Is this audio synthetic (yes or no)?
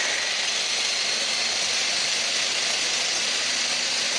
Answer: no